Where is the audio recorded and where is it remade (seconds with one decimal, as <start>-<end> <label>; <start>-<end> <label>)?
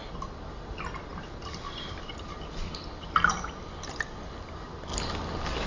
0.0-5.7 recorded